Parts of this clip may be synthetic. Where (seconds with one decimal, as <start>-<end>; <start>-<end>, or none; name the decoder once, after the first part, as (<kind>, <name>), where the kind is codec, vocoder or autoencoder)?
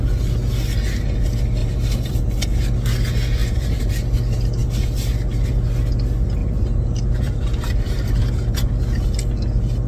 1.6-2.2 (vocoder, BigVGAN v2); 3.4-3.9; 6.4-8.7